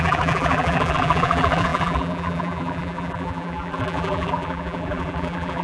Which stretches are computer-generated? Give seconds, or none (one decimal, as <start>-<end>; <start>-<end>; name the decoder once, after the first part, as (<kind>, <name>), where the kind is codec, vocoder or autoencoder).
0.0-5.6 (vocoder, BigVGAN v2)